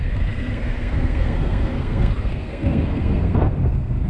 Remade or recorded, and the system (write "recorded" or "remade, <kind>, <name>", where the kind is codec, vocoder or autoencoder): remade, codec, SNAC